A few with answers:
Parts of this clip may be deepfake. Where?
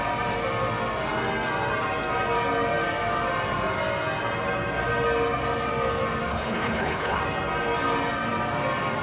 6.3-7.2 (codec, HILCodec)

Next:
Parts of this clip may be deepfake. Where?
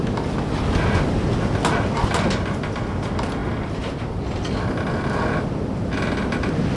none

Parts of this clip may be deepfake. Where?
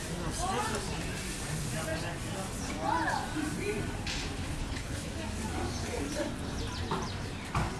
4.6-5.1 (codec, HILCodec)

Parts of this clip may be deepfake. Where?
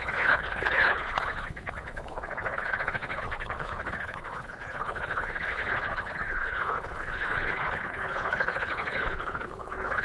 0.0-10.0 (codec, HILCodec)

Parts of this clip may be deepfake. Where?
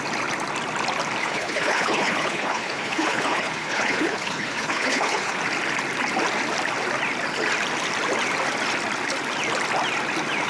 1.2-5.4 (codec, HILCodec)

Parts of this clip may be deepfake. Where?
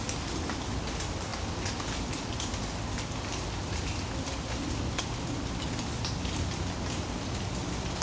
none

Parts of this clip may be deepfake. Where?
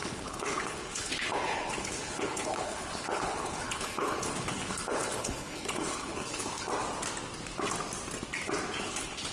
0.0-6.7 (codec, HILCodec); 8.8-9.3